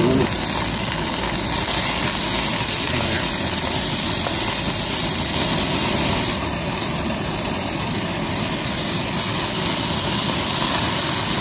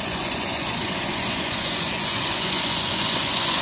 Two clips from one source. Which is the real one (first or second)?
first